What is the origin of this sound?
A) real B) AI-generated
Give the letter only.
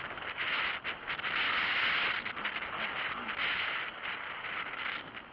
A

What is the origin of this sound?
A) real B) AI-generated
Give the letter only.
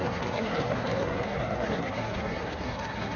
B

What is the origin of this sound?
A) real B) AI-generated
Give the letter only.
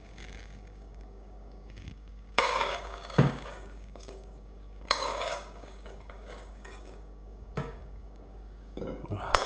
B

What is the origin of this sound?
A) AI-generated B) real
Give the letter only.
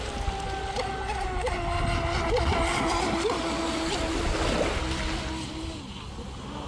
B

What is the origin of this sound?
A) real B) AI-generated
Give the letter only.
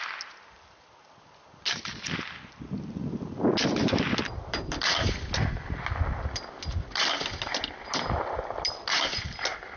A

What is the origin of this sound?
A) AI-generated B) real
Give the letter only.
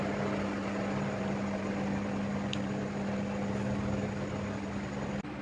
B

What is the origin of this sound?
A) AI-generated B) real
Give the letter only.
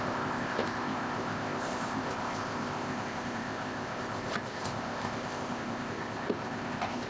A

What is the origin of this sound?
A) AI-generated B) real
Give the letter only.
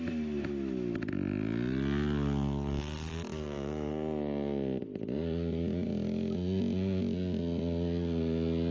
B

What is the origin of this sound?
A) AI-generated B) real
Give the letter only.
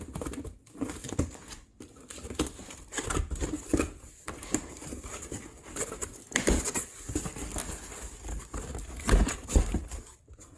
B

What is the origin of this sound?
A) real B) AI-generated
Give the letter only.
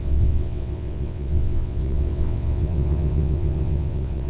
B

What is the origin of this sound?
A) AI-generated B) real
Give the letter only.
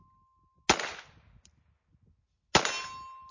B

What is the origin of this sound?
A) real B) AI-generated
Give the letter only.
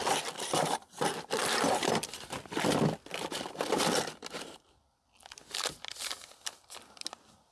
A